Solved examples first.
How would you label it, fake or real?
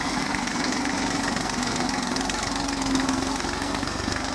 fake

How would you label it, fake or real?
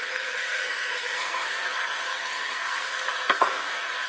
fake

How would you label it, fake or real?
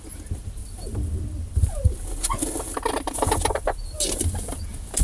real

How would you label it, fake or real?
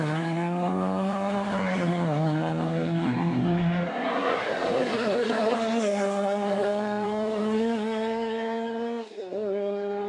fake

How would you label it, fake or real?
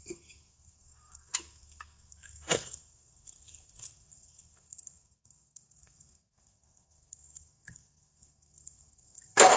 fake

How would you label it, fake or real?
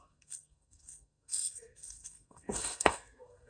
fake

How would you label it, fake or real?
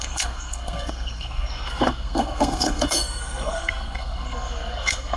fake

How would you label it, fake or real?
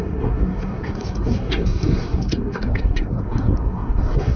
fake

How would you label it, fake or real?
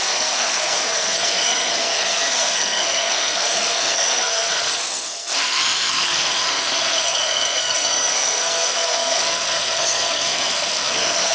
fake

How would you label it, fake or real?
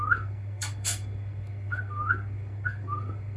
fake